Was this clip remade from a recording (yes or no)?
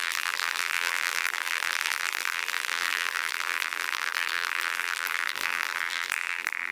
yes